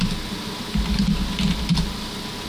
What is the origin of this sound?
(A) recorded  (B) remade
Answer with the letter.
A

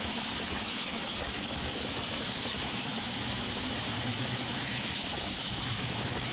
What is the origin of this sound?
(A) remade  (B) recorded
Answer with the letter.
A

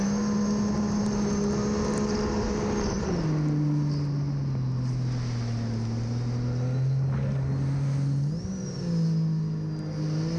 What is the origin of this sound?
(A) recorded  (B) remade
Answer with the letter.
A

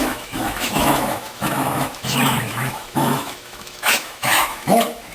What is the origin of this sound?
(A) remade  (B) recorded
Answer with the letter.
A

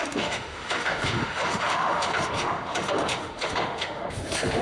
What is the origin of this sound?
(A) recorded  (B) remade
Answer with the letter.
B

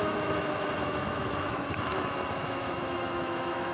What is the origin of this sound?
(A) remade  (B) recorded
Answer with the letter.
A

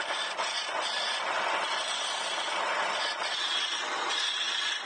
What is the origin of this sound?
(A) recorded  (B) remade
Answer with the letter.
A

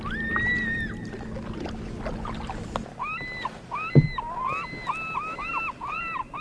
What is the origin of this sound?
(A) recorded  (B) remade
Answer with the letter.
A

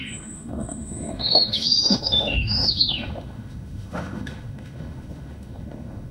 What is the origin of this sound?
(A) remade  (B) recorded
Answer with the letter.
A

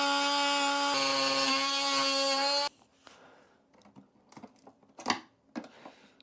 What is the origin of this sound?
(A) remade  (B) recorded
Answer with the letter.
B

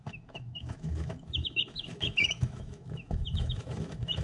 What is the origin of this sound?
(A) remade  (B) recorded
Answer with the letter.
A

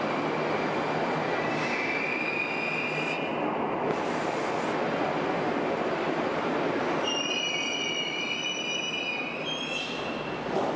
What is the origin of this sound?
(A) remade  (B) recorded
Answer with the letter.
B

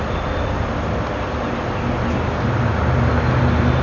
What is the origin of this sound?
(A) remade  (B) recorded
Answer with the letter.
B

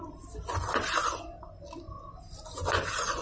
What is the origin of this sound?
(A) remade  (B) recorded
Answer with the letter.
B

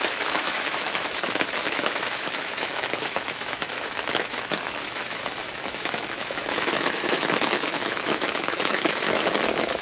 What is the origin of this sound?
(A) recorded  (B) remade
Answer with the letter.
B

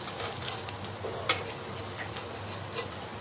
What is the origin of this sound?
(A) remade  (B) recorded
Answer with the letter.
B